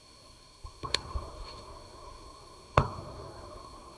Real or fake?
fake